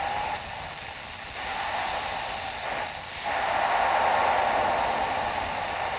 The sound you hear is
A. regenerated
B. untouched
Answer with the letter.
B